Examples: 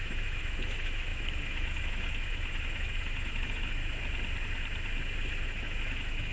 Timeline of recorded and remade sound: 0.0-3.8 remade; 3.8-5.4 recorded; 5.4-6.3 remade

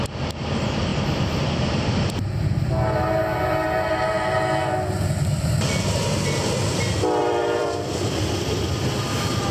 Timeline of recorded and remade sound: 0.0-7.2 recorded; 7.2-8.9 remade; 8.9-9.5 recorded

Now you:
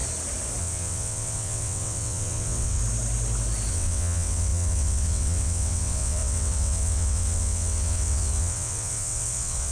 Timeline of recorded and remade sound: 0.0-0.6 recorded; 0.6-2.8 remade; 2.8-3.7 recorded; 3.7-9.7 remade

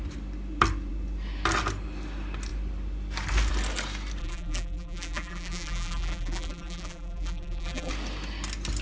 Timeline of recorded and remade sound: 0.0-4.2 recorded; 4.2-7.9 remade; 7.9-8.8 recorded

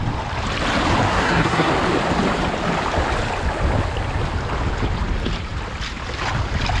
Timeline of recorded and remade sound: 0.0-1.1 recorded; 1.1-1.7 remade; 1.7-6.8 recorded

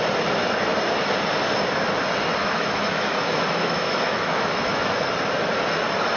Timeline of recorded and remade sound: 0.0-2.4 recorded; 2.4-5.0 remade; 5.0-6.2 recorded